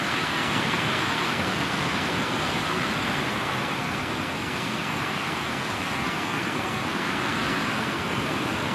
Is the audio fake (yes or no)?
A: yes